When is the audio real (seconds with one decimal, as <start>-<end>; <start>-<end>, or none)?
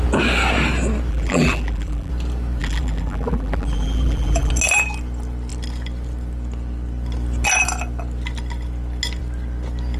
0.0-1.1; 2.1-2.6; 4.5-10.0